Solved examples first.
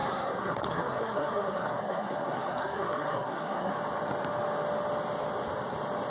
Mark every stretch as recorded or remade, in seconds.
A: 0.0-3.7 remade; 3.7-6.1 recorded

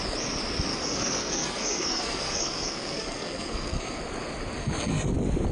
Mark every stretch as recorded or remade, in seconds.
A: 0.0-0.7 recorded; 0.7-4.0 remade; 4.0-4.6 recorded; 4.6-5.1 remade; 5.1-5.5 recorded

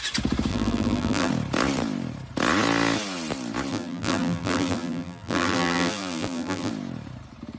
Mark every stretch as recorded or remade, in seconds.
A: 0.0-0.5 recorded; 0.5-1.3 remade; 1.3-3.7 recorded; 3.7-6.7 remade; 6.7-7.6 recorded

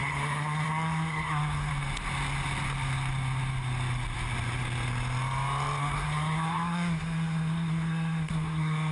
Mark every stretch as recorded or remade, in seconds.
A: 0.0-1.7 remade; 1.7-5.8 recorded; 5.8-8.9 remade

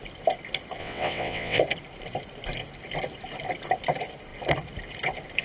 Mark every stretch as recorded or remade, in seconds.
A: 0.0-0.8 recorded; 0.8-1.6 remade; 1.6-5.4 recorded